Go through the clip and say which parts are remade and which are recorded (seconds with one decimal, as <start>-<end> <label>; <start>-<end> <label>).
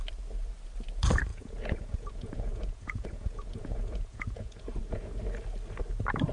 0.0-1.3 recorded; 1.3-5.1 remade; 5.1-6.3 recorded